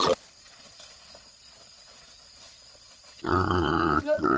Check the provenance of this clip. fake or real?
fake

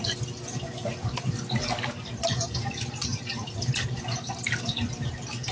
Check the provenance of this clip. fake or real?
real